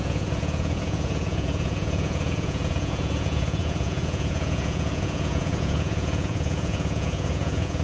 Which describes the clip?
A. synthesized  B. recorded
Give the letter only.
A